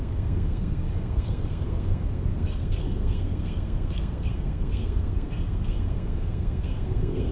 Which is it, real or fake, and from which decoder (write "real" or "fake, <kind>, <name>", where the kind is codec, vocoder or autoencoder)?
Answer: fake, codec, SNAC